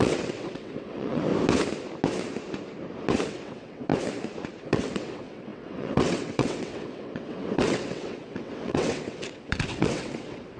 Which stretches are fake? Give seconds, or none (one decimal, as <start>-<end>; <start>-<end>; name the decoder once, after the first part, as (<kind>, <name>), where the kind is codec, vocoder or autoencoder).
0.0-1.3 (vocoder, WaveNeXt); 3.3-3.9; 4.6-10.6